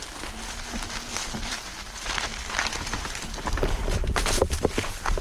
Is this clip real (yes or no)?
yes